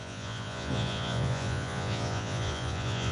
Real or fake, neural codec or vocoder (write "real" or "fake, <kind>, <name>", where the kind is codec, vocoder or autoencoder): fake, vocoder, Vocos